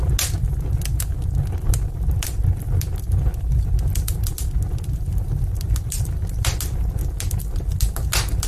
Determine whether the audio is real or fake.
real